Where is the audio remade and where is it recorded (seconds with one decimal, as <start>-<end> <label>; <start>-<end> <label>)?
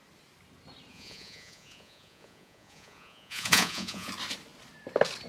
0.0-0.9 recorded; 0.9-4.1 remade; 4.1-5.3 recorded